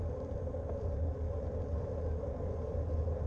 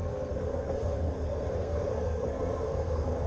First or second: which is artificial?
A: second